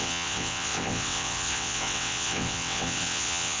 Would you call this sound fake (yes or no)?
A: yes